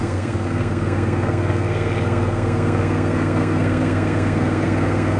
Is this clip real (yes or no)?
no